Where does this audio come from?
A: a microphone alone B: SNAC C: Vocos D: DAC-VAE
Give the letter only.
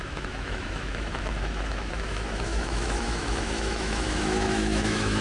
D